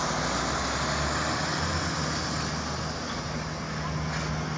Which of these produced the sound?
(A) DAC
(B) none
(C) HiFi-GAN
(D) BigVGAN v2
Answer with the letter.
B